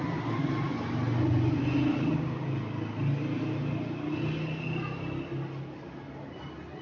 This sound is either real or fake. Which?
real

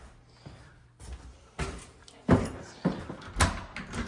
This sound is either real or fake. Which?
real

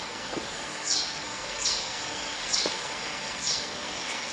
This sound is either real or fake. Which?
fake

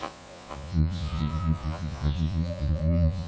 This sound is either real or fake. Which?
fake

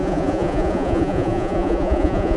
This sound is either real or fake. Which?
fake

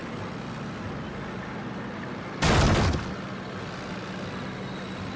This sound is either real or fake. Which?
real